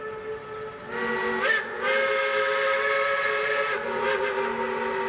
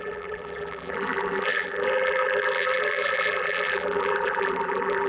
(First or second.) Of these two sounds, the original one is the first